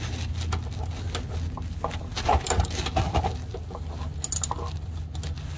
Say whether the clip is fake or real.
real